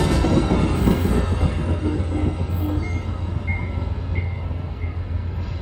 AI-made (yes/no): yes